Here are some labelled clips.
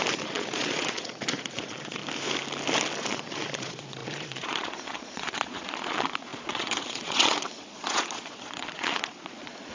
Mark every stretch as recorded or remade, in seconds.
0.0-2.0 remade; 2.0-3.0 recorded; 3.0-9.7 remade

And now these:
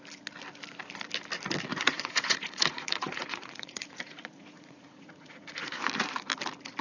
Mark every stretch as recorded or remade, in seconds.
0.0-1.7 recorded; 1.7-5.8 remade; 5.8-6.8 recorded

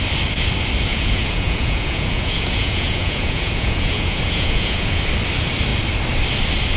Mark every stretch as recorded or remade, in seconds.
0.0-0.9 recorded; 0.9-5.0 remade; 5.0-6.8 recorded

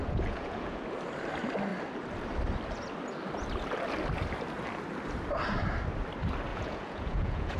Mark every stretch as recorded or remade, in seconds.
0.0-0.8 remade; 0.8-6.5 recorded; 6.5-7.6 remade